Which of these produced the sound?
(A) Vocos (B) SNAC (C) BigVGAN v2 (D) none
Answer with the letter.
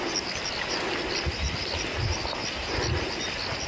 D